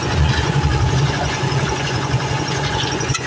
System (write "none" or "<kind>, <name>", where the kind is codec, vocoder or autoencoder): vocoder, Vocos